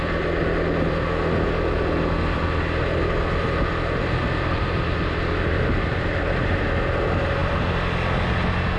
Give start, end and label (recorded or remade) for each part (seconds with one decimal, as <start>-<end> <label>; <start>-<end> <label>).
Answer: 0.0-8.8 recorded